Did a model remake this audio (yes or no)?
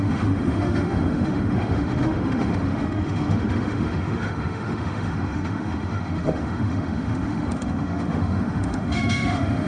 yes